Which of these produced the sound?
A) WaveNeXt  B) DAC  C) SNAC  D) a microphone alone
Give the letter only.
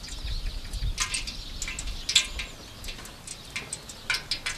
D